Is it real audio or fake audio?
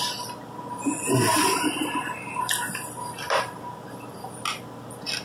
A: real